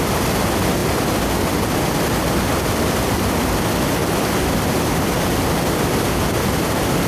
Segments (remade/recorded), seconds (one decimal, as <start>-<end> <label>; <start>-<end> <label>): 0.0-4.0 recorded; 4.0-5.8 remade; 5.8-7.1 recorded